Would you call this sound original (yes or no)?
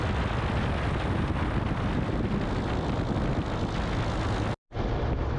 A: yes